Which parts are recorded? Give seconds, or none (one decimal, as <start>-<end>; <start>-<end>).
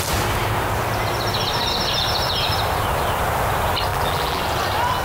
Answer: 0.0-3.9; 4.4-5.0